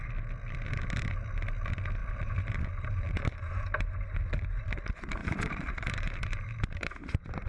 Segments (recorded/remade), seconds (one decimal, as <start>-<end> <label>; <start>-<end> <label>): 0.0-2.0 recorded; 2.0-4.6 remade; 4.6-5.2 recorded; 5.2-7.5 remade

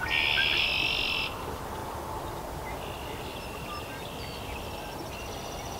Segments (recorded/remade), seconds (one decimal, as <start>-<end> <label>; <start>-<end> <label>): 0.0-5.8 recorded